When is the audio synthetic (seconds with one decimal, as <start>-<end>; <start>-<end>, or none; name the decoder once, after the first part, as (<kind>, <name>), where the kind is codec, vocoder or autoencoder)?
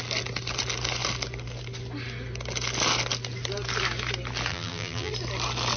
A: 4.5-5.1 (vocoder, BigVGAN v2)